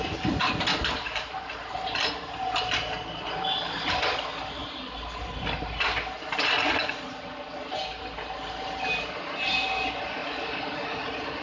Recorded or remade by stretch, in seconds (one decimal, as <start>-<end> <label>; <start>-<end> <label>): 0.0-0.7 recorded; 0.7-1.3 remade; 1.3-11.4 recorded